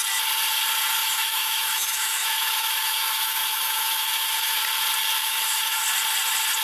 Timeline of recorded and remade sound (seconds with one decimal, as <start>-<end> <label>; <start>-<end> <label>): 0.0-1.0 recorded; 1.0-4.6 remade; 4.6-5.2 recorded; 5.2-5.8 remade; 5.8-6.6 recorded